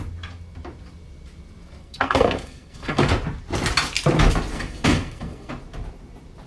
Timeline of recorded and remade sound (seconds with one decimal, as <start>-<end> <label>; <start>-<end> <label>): 0.0-1.8 recorded; 1.8-3.1 remade; 3.1-4.5 recorded; 4.5-5.5 remade; 5.5-6.5 recorded